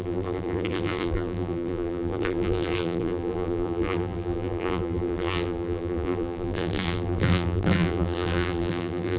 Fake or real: fake